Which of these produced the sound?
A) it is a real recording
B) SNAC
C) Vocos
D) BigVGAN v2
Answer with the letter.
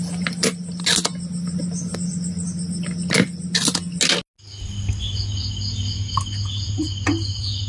A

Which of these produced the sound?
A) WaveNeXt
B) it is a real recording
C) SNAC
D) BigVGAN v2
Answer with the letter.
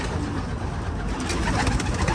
B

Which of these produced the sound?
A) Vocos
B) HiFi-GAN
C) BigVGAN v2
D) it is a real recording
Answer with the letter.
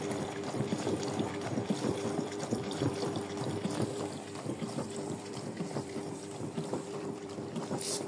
C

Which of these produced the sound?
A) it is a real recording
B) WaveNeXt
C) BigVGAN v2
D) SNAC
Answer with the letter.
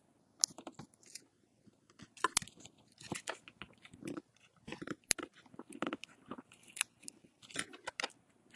A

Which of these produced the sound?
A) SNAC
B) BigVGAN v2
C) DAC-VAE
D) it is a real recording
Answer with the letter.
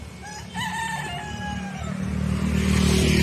D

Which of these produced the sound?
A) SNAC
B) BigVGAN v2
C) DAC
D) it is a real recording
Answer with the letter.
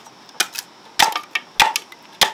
D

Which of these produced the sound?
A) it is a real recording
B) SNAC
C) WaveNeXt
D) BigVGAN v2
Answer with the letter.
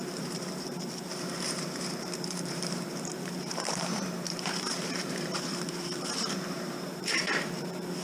D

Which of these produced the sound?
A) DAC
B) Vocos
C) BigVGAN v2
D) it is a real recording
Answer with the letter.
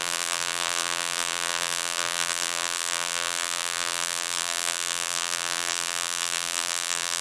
C